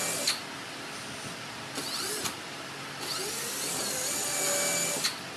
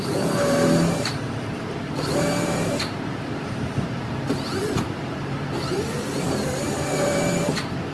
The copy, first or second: second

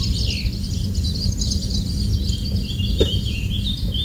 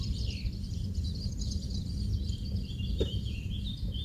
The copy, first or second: second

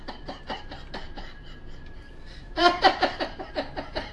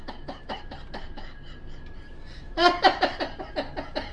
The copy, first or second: first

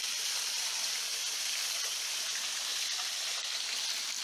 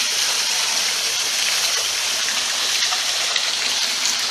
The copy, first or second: second